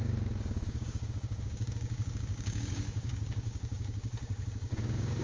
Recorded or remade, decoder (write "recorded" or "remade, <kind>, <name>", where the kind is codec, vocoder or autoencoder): remade, codec, DAC